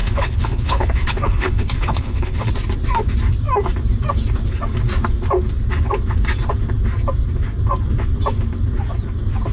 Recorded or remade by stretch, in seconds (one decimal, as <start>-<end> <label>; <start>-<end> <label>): 0.0-2.5 remade; 2.5-9.5 recorded